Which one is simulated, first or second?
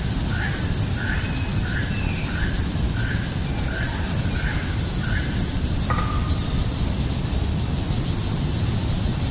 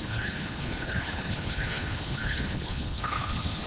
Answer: second